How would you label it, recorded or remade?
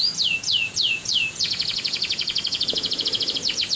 remade